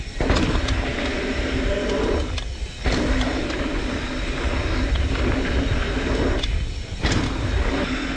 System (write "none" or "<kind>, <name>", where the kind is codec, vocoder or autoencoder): none